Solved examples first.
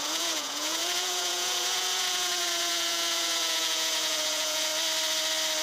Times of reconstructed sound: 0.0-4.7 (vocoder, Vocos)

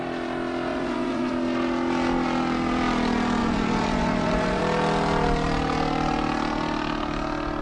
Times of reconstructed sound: 0.7-1.3 (vocoder, Vocos); 3.4-4.6